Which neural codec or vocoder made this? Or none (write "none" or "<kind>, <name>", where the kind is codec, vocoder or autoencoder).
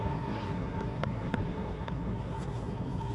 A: codec, SNAC